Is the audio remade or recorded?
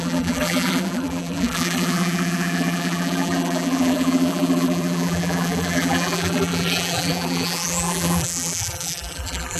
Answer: remade